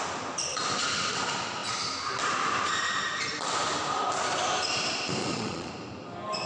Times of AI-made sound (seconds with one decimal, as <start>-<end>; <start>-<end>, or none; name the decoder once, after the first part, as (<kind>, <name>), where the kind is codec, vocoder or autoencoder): 5.2-5.7 (vocoder, Vocos)